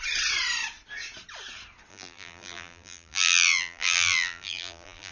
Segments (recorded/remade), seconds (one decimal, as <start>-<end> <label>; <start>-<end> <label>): 0.0-1.9 recorded; 1.9-5.1 remade